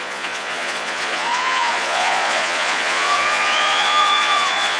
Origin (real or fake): fake